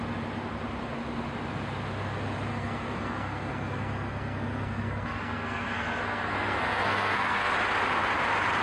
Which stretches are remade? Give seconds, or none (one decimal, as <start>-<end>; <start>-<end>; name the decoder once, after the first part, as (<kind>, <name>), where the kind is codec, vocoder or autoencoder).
2.5-7.5 (codec, SNAC)